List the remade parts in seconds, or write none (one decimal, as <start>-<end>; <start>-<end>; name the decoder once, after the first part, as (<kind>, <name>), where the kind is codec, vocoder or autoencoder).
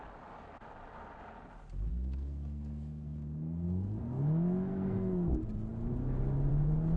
1.9-4.1 (codec, SNAC); 4.7-5.3